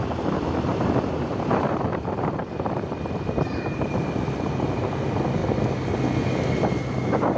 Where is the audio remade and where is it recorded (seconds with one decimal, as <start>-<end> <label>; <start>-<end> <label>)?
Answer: 0.0-0.7 recorded; 0.7-4.0 remade; 4.0-7.4 recorded

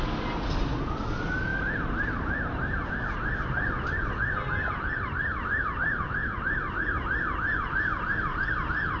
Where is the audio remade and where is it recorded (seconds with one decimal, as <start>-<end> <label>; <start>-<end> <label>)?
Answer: 0.0-9.0 recorded